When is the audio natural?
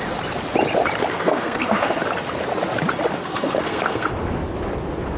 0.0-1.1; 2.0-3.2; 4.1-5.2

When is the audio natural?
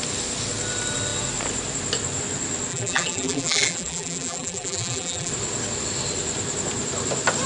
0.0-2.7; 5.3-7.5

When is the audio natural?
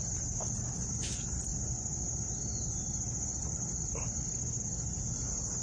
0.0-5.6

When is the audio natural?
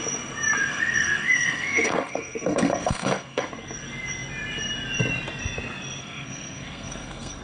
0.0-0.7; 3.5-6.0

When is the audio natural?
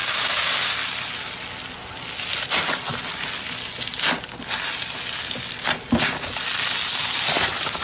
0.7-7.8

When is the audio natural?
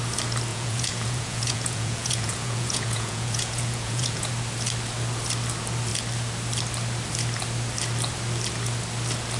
0.0-0.5; 4.3-9.4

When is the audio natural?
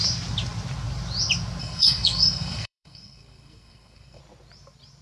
0.0-1.6; 4.2-5.0